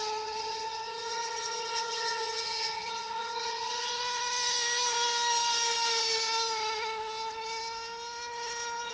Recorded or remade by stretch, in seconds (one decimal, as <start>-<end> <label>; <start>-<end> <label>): 0.0-3.9 remade; 3.9-8.9 recorded